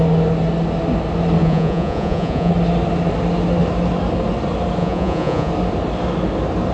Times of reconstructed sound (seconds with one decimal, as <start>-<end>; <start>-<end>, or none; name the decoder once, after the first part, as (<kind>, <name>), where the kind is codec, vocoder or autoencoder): 1.4-2.5 (vocoder, Vocos); 4.8-5.5